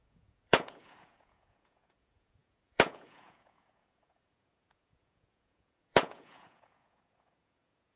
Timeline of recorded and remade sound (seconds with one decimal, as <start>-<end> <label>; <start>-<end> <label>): 0.0-8.0 remade